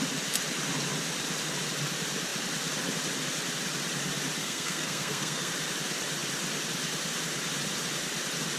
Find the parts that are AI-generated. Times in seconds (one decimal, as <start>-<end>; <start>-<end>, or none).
4.4-5.5

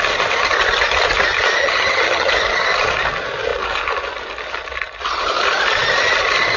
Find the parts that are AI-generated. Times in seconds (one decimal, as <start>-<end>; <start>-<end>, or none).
1.6-2.3

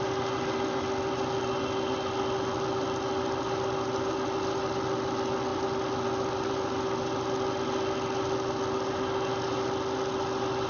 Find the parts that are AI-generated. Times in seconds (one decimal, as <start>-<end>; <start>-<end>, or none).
none